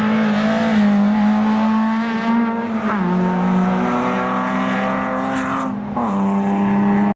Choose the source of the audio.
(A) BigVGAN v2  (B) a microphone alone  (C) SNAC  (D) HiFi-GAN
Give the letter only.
B